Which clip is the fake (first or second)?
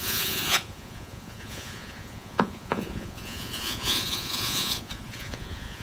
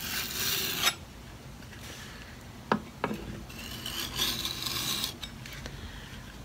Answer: first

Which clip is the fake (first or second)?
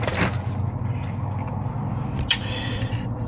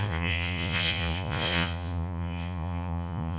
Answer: second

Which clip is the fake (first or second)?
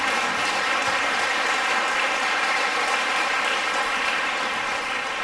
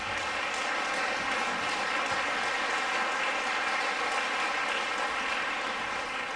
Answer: first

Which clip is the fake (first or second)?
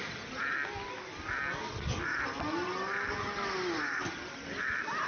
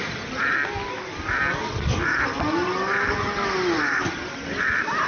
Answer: second